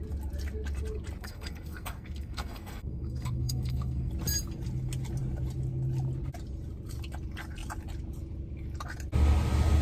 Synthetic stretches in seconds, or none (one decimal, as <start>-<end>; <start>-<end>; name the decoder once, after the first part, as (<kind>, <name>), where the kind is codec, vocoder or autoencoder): 1.2-4.1 (codec, SNAC)